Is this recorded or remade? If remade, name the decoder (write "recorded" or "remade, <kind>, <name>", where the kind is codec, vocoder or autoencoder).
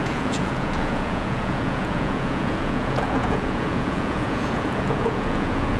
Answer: remade, vocoder, Vocos